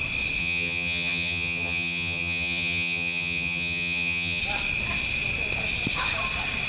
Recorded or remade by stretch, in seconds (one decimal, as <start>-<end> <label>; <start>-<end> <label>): 0.0-0.4 recorded; 0.4-4.4 remade; 4.4-6.7 recorded